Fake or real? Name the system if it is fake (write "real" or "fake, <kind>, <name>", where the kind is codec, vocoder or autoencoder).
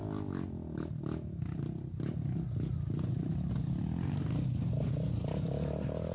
real